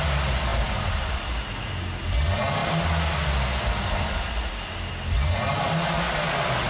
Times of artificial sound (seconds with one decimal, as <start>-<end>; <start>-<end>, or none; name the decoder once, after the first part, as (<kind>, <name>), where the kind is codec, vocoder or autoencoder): none